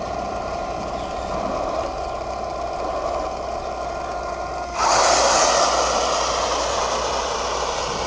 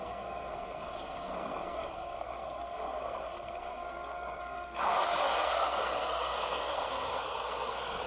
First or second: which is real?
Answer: first